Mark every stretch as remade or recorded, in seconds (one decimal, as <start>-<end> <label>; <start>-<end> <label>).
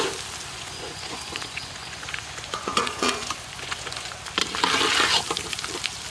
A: 0.0-0.5 recorded; 0.5-4.2 remade; 4.2-6.1 recorded